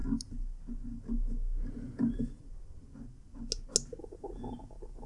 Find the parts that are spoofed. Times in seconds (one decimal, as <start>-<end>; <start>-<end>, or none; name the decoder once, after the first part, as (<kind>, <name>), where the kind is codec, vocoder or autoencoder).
1.7-2.4 (vocoder, Vocos); 4.0-5.1